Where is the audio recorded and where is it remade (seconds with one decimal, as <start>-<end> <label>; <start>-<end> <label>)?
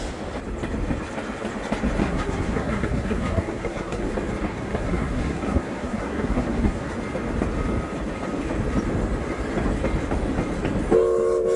0.0-2.0 recorded; 2.0-4.1 remade; 4.1-4.5 recorded; 4.5-6.9 remade; 6.9-11.6 recorded